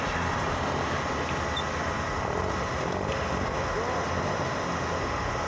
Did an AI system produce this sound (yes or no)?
no